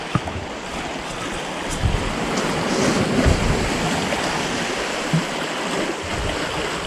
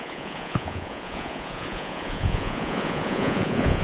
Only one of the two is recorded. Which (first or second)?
first